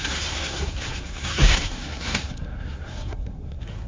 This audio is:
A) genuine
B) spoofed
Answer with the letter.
B